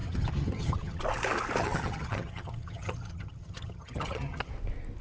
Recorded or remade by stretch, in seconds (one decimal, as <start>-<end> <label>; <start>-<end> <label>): 0.0-1.0 remade; 1.0-1.6 recorded; 1.6-4.5 remade; 4.5-5.0 recorded